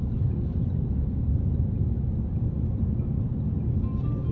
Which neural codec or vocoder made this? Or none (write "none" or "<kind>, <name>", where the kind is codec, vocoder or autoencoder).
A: none